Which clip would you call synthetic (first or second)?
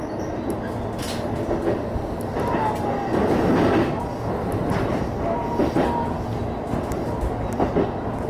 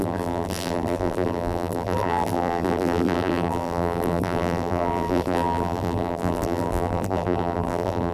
second